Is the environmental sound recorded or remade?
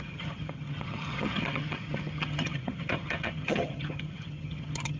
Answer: remade